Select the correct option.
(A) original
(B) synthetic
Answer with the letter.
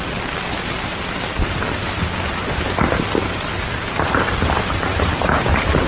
A